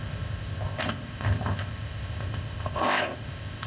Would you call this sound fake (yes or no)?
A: yes